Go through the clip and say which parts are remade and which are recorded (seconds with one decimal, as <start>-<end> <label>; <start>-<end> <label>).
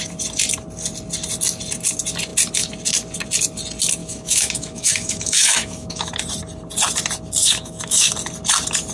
0.0-4.0 recorded; 4.0-6.1 remade; 6.1-7.4 recorded; 7.4-8.1 remade; 8.1-8.9 recorded